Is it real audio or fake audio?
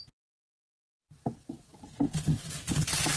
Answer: real